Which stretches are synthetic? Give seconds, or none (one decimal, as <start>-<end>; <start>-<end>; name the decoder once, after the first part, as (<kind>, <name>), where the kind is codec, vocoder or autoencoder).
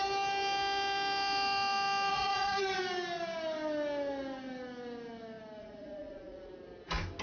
2.1-2.8 (vocoder, Vocos); 5.6-6.5